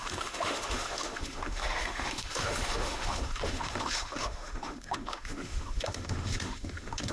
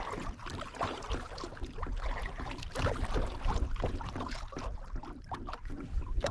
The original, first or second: second